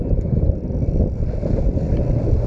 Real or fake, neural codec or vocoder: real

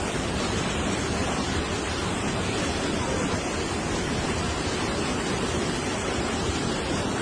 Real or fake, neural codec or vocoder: real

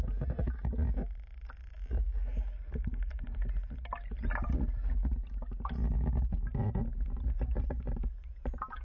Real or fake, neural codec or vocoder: real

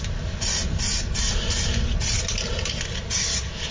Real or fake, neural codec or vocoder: real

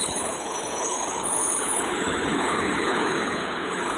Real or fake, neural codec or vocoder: fake, codec, HILCodec